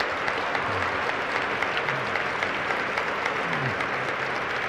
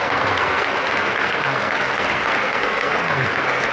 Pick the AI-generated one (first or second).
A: second